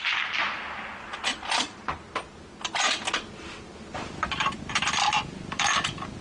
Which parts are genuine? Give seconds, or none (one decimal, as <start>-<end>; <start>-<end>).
0.0-6.2